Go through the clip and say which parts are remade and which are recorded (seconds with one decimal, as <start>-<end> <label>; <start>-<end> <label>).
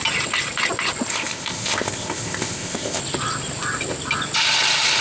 0.0-1.1 recorded; 1.1-3.0 remade; 3.0-5.0 recorded